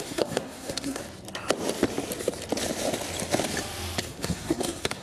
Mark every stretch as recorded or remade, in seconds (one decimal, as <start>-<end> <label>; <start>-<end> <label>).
0.0-1.0 remade; 1.0-4.0 recorded; 4.0-5.0 remade